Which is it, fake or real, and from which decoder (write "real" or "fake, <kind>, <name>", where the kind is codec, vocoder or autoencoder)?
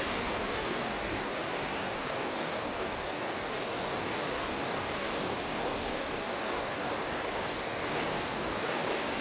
fake, codec, DAC